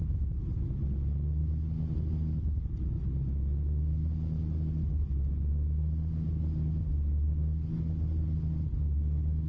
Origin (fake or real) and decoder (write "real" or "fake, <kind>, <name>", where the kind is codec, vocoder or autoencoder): real